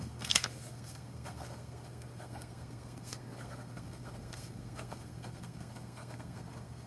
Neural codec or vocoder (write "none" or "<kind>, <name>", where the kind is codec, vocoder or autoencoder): codec, SNAC